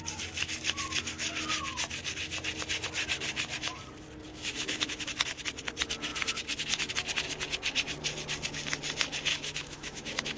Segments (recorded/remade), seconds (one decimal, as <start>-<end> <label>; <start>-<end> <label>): 0.0-4.3 recorded; 4.3-5.1 remade; 5.1-9.3 recorded; 9.3-10.4 remade